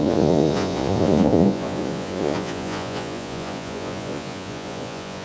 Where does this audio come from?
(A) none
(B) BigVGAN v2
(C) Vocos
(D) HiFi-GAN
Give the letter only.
C